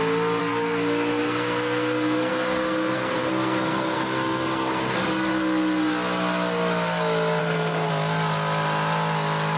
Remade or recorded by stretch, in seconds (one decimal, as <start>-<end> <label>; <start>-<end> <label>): 0.0-0.4 recorded; 0.4-5.0 remade; 5.0-7.4 recorded; 7.4-7.9 remade; 7.9-9.6 recorded